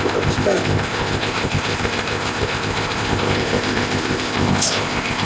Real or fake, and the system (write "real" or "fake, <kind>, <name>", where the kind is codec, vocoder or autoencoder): fake, codec, ZipCodec